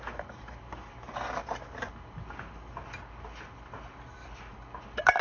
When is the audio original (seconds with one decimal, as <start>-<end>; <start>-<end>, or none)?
0.0-5.2